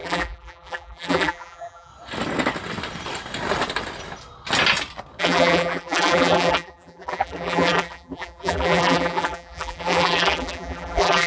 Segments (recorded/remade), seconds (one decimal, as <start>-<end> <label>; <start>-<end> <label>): 0.0-1.9 remade; 1.9-5.2 recorded; 5.2-11.3 remade